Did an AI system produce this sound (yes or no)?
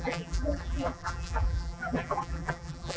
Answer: yes